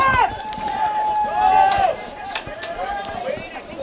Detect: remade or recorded remade